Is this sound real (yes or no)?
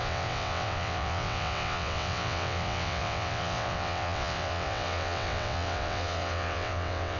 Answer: no